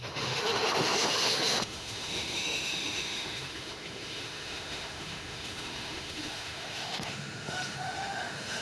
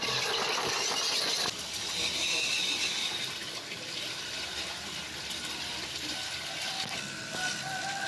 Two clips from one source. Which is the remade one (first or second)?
first